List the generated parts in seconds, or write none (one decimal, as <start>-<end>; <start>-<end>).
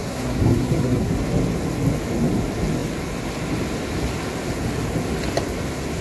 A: 0.0-1.1